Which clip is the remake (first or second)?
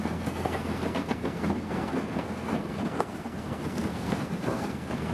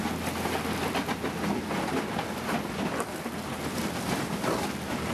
first